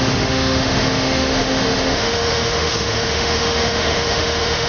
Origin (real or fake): fake